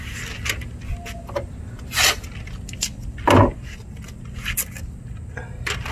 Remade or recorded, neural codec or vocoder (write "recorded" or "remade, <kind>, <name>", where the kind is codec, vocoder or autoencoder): recorded